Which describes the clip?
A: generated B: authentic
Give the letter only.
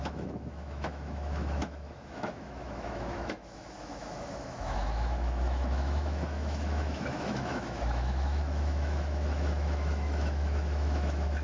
A